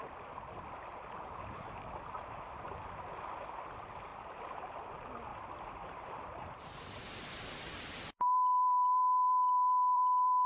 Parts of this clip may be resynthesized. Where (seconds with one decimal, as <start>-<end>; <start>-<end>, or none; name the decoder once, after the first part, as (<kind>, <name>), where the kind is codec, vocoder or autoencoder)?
4.1-4.7 (vocoder, BigVGAN v2); 5.3-10.5